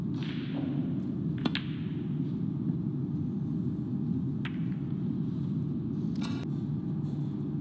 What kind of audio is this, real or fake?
real